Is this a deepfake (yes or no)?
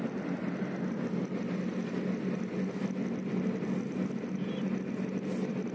no